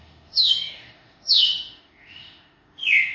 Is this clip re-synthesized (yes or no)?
yes